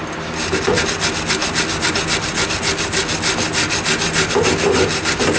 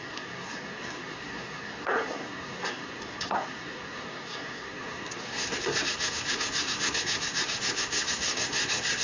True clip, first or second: first